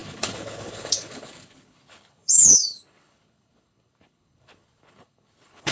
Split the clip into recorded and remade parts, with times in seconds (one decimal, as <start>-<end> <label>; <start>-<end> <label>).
0.0-5.7 remade